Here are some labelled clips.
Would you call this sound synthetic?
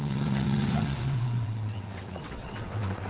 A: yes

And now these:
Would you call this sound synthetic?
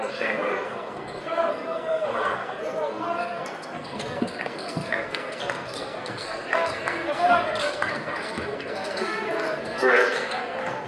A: yes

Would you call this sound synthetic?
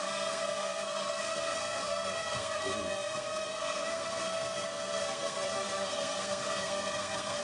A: yes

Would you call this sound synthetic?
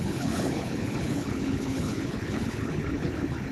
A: yes